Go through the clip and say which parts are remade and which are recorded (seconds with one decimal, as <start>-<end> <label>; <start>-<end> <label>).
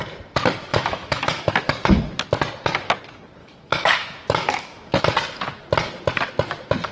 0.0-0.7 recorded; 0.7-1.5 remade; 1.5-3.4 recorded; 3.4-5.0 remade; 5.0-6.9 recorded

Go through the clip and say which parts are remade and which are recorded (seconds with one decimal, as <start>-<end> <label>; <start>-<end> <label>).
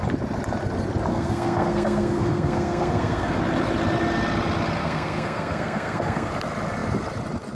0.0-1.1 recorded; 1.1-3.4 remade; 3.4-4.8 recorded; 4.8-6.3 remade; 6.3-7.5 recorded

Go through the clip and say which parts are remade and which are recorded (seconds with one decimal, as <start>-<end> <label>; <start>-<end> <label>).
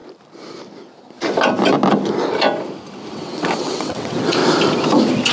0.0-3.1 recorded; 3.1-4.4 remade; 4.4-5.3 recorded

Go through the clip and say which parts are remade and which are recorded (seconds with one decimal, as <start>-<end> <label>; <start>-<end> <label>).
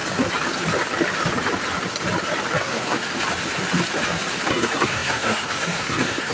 0.0-2.6 recorded; 2.6-3.1 remade; 3.1-4.5 recorded; 4.5-6.3 remade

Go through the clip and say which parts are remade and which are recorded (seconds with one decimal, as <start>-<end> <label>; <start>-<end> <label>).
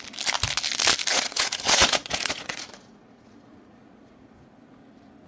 0.0-1.1 recorded; 1.1-4.3 remade; 4.3-5.3 recorded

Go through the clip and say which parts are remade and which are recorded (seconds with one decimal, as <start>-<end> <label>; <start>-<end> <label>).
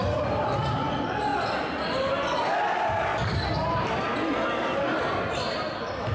0.0-6.1 recorded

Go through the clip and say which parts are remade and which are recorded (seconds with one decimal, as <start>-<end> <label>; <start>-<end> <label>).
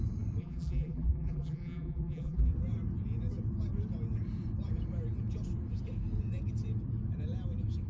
0.0-0.4 recorded; 0.4-2.5 remade; 2.5-7.9 recorded